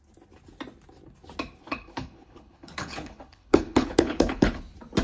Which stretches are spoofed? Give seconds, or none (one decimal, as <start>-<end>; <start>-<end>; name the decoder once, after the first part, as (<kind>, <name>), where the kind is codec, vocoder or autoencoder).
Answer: 1.6-4.6 (codec, HILCodec)